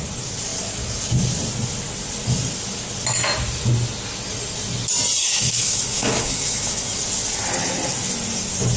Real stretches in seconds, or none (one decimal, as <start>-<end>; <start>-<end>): 0.0-5.2; 7.0-8.8